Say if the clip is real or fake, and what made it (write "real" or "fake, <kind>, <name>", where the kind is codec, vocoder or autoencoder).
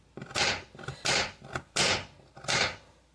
real